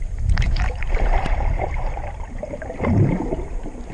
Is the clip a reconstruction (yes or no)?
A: yes